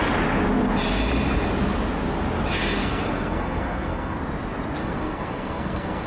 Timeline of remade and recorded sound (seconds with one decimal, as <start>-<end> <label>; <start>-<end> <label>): 0.0-2.8 recorded; 2.8-4.2 remade; 4.2-4.8 recorded; 4.8-6.1 remade